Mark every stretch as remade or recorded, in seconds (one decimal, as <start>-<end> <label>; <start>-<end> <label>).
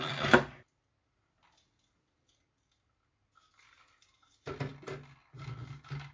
0.0-6.1 recorded